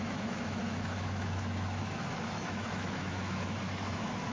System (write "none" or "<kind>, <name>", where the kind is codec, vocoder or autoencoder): autoencoder, DAC-VAE